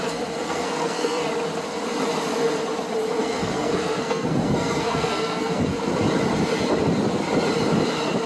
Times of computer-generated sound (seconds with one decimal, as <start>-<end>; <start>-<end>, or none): 0.0-1.2; 3.2-5.9